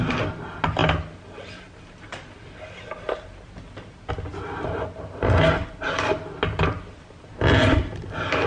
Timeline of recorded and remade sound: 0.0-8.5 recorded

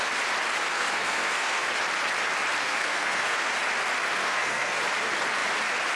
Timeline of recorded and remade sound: 0.0-0.7 recorded; 0.7-1.7 remade; 1.7-2.6 recorded; 2.6-3.5 remade; 3.5-4.0 recorded; 4.0-4.8 remade; 4.8-6.0 recorded

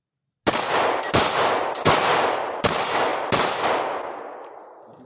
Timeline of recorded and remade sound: 0.0-5.0 recorded